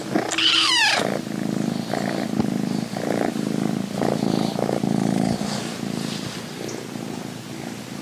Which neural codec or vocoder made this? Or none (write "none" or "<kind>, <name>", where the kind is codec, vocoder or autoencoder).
none